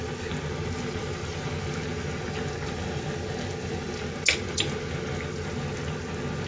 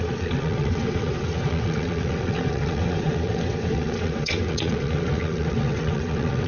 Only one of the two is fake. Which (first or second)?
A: second